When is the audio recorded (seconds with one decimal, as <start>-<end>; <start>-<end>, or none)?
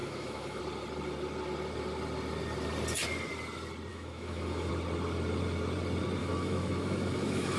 0.6-3.9; 4.7-6.2